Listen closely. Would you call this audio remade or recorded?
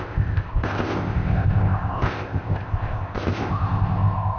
remade